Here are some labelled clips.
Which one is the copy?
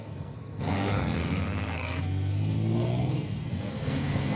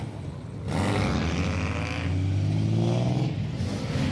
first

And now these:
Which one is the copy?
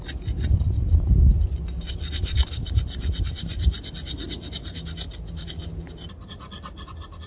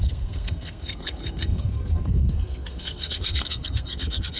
second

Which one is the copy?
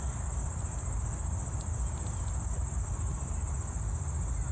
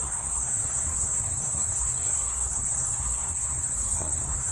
second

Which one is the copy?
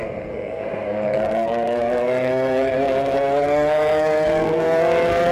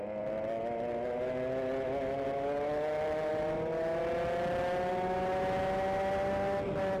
first